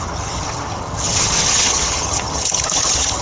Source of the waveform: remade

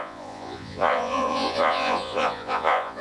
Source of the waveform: remade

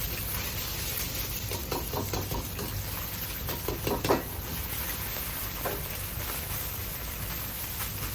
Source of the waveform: recorded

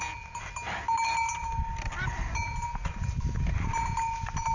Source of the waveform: recorded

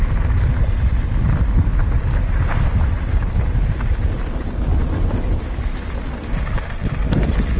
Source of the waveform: recorded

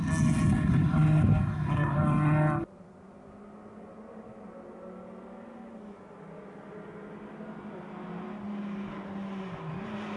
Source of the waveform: recorded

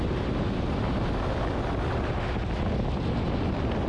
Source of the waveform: recorded